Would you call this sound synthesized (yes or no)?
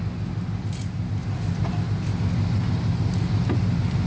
no